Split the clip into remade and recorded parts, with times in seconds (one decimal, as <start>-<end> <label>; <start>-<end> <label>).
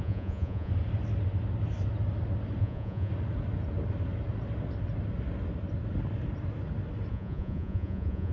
0.0-0.7 remade; 0.7-2.6 recorded; 2.6-3.1 remade; 3.1-7.1 recorded; 7.1-8.3 remade